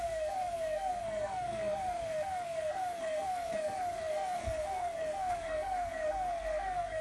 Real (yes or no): no